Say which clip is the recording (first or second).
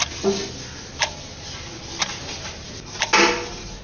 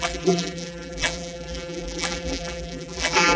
first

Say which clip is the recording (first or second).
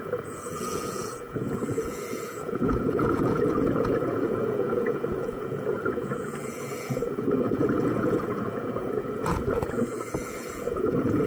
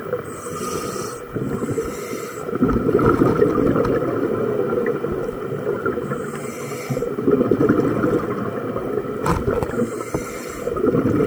second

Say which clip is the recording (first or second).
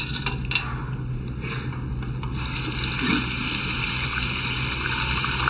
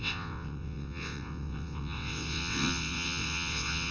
first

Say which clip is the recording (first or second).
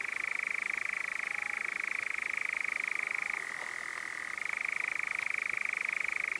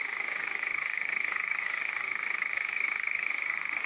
first